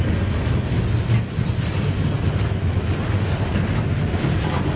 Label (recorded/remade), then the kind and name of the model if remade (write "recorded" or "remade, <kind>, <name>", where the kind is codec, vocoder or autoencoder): recorded